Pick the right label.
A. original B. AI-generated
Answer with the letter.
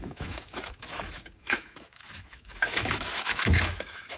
B